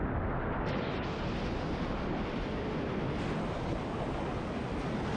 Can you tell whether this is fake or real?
real